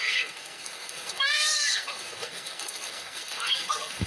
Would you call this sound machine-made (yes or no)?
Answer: yes